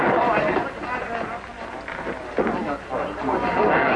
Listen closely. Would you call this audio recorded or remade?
recorded